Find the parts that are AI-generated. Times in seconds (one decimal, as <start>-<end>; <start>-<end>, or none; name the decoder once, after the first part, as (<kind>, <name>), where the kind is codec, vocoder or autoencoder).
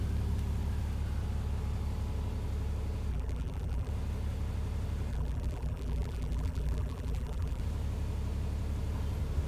3.1-3.9 (vocoder, BigVGAN v2); 5.1-7.6